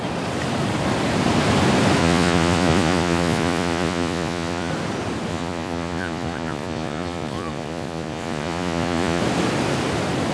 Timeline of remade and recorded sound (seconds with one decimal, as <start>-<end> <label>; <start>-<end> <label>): 0.0-2.0 recorded; 2.0-4.7 remade; 4.7-5.3 recorded; 5.3-9.2 remade; 9.2-10.3 recorded